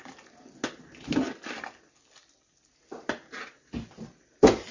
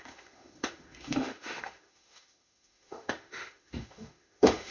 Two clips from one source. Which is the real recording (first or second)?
first